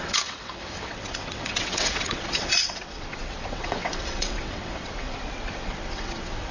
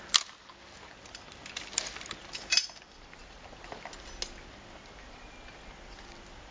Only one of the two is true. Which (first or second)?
second